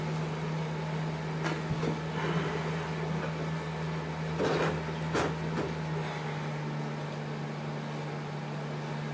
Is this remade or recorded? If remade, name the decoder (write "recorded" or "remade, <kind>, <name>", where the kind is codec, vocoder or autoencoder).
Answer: recorded